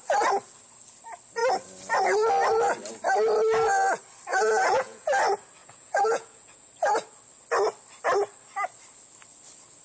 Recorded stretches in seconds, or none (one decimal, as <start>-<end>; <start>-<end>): 0.0-4.3; 5.1-5.6; 6.7-9.8